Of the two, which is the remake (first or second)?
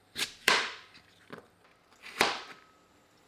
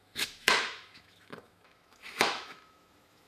second